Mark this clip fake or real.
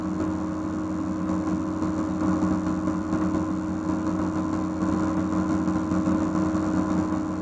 real